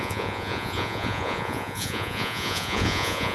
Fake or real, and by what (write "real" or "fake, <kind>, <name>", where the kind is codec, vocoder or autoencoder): fake, vocoder, Vocos